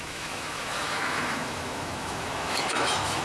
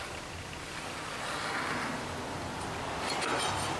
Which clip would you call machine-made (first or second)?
first